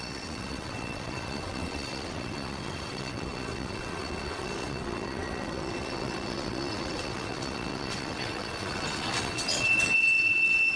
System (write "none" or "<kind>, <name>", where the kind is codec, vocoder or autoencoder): vocoder, WaveNeXt